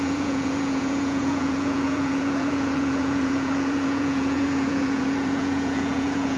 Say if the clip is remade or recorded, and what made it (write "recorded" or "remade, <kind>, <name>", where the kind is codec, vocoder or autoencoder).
remade, vocoder, Vocos